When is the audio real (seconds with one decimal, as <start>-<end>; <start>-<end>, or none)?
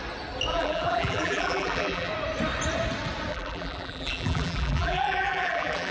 0.0-0.5; 2.1-3.3